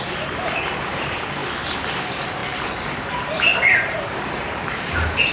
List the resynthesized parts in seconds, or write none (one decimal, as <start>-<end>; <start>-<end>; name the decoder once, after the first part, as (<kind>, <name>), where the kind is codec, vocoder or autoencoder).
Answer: 0.0-1.4 (vocoder, BigVGAN v2); 1.9-2.4; 3.1-5.3